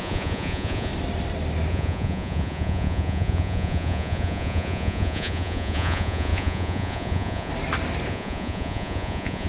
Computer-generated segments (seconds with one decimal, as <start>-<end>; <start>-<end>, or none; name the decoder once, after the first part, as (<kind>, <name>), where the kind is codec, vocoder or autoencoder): 0.0-0.9 (vocoder, Vocos); 1.7-7.5; 8.1-9.5